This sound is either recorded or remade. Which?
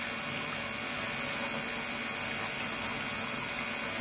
recorded